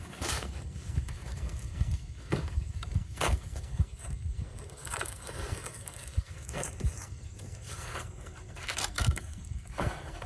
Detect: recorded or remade remade